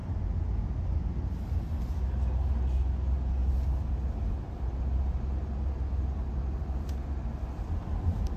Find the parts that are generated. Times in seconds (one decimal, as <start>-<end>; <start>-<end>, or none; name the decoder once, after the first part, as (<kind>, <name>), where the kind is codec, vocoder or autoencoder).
0.0-0.6 (vocoder, BigVGAN v2)